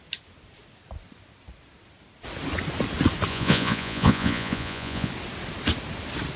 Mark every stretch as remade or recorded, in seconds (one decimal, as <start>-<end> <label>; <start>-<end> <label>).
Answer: 0.0-3.3 recorded; 3.3-5.1 remade; 5.1-6.4 recorded